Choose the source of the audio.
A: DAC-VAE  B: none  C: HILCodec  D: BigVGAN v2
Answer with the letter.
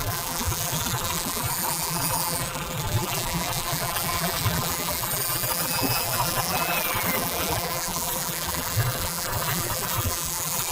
D